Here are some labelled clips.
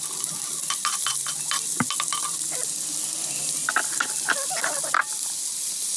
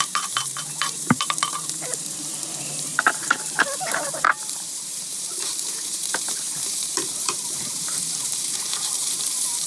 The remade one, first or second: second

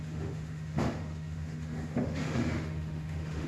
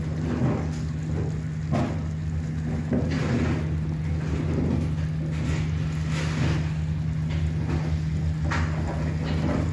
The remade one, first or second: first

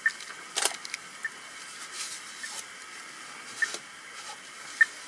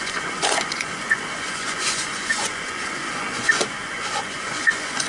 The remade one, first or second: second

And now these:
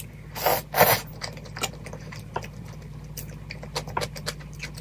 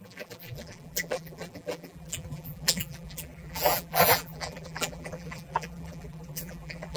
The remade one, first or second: second